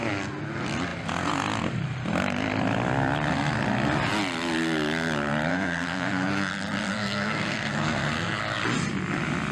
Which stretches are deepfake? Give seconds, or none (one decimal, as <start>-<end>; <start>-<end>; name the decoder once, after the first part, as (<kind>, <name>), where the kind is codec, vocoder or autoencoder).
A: 5.5-6.5 (codec, SNAC); 6.9-8.4